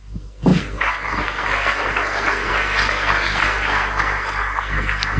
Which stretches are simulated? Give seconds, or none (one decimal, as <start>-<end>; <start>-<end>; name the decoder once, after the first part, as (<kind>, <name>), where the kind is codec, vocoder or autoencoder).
0.0-5.2 (codec, SNAC)